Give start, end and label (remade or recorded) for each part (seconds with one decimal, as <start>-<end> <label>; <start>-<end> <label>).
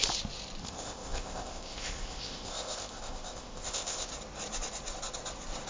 0.0-0.6 recorded; 0.6-4.1 remade; 4.1-5.7 recorded